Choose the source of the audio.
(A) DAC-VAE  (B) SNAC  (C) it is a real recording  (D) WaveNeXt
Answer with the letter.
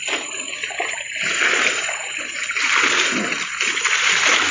C